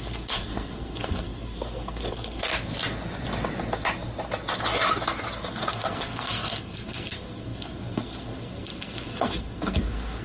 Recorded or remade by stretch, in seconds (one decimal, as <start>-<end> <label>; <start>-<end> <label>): 0.0-2.5 remade; 2.5-5.5 recorded; 5.5-10.2 remade